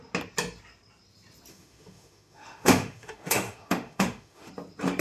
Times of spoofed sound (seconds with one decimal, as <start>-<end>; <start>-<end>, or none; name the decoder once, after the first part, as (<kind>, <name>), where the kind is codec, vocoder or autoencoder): 1.5-4.5 (autoencoder, DAC-VAE)